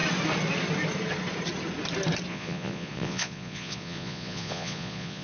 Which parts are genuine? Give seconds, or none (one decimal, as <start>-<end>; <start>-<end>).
0.0-2.3